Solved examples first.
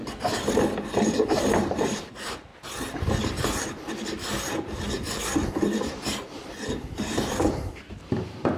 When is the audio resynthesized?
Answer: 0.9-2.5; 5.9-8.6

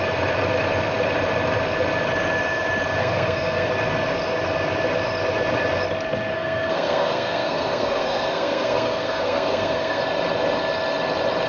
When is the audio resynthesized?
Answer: 3.0-3.7; 6.3-10.0